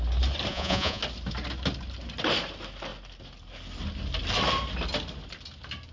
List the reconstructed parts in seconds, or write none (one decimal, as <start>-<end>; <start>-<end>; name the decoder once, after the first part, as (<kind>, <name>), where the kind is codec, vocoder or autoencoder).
0.5-1.0 (vocoder, Vocos)